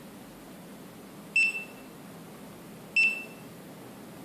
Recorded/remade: recorded